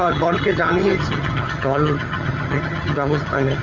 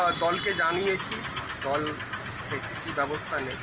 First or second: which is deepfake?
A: first